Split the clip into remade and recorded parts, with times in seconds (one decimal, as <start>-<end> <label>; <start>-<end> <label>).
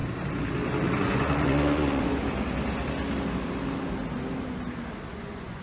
0.0-1.0 recorded; 1.0-2.2 remade; 2.2-5.1 recorded; 5.1-5.6 remade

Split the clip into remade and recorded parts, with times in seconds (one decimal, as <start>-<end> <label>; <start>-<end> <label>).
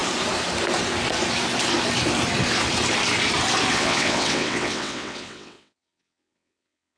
0.0-3.7 recorded; 3.7-7.0 remade